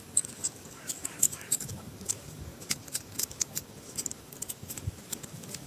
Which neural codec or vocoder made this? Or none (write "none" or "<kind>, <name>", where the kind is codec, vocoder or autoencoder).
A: codec, DAC